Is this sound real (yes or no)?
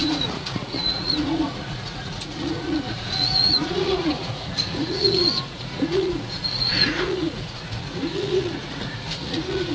no